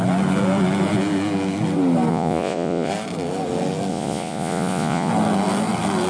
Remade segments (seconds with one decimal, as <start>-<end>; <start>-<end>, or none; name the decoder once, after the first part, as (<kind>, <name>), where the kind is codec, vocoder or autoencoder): 2.1-2.9 (vocoder, Vocos); 3.9-5.1